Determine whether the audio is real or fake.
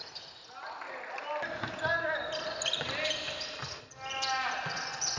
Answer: real